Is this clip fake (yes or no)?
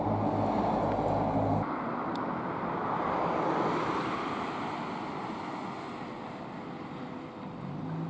no